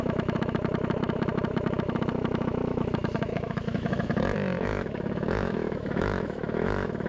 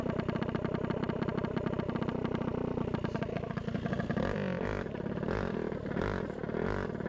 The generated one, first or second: first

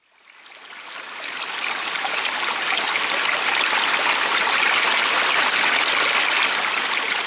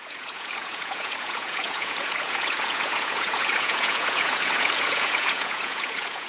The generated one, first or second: second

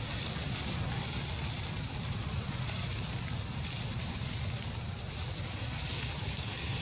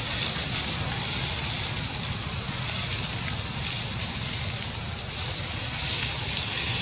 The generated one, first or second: first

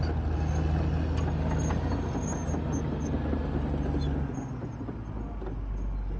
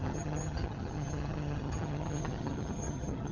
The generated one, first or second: second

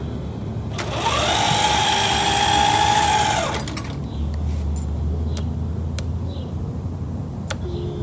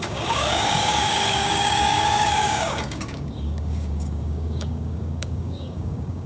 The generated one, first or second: second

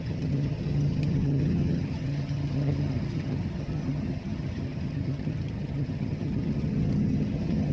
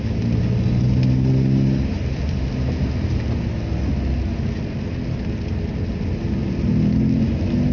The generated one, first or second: first